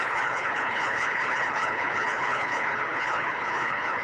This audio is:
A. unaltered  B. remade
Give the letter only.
B